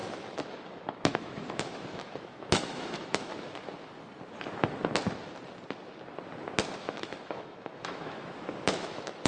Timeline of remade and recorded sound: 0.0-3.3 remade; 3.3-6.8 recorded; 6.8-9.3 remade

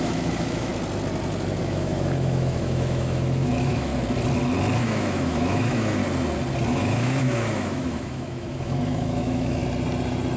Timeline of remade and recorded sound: 0.0-0.7 remade; 0.7-1.6 recorded; 1.6-3.9 remade; 3.9-4.8 recorded; 4.8-6.0 remade; 6.0-6.7 recorded; 6.7-9.6 remade; 9.6-10.4 recorded